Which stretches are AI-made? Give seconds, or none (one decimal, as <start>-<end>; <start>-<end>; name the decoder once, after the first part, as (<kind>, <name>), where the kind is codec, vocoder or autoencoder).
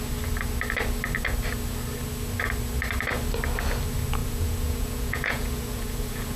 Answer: 4.2-6.4 (vocoder, Vocos)